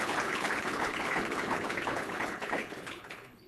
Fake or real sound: fake